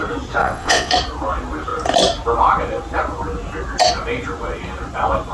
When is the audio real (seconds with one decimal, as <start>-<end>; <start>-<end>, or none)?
0.0-0.4; 0.9-5.3